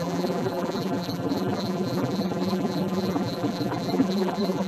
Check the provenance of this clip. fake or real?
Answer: fake